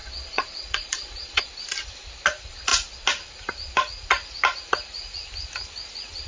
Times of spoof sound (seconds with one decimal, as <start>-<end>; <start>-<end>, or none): 0.0-1.5